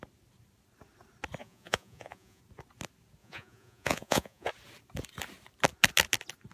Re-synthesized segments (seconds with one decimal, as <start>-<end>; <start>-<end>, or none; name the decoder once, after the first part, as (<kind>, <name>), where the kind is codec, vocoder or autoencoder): 1.4-2.4 (vocoder, Vocos); 3.2-4.5